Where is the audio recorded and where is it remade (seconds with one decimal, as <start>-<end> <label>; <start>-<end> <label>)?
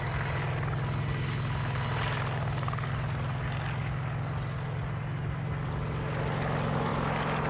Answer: 0.0-7.5 recorded